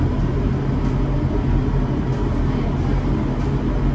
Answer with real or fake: real